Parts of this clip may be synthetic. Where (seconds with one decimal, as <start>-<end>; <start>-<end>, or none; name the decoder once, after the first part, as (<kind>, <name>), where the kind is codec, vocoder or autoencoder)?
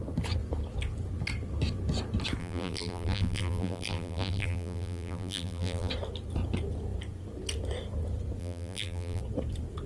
2.4-5.9 (vocoder, BigVGAN v2); 8.4-9.2